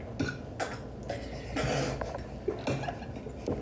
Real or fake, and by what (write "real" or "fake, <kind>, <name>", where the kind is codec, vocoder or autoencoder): real